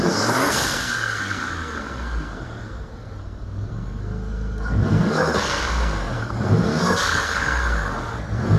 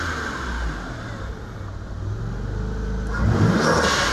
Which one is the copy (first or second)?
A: first